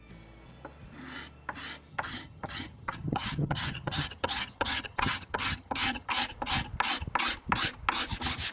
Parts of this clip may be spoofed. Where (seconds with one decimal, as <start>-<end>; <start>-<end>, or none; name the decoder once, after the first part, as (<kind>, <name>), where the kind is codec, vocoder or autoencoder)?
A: 1.9-6.1 (vocoder, HiFi-GAN)